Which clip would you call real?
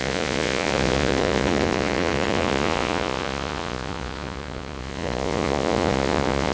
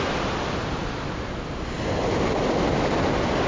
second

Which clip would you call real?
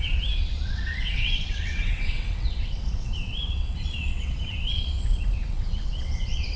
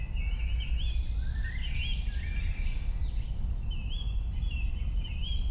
second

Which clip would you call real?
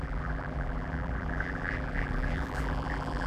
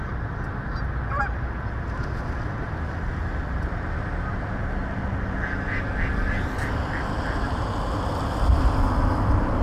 second